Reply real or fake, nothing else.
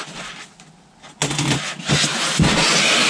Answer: real